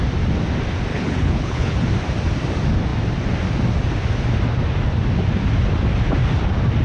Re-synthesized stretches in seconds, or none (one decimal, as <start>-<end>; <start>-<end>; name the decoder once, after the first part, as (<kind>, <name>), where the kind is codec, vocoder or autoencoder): 0.9-1.9 (codec, HILCodec)